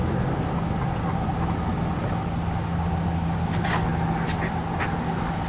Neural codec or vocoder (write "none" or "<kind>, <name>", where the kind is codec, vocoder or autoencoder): none